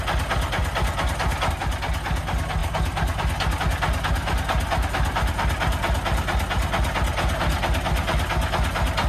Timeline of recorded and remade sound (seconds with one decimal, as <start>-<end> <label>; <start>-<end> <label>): 0.0-9.1 recorded